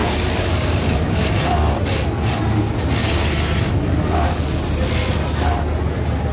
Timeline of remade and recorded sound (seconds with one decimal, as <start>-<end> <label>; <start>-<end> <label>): 0.0-1.3 remade; 1.3-3.0 recorded; 3.0-4.6 remade; 4.6-6.3 recorded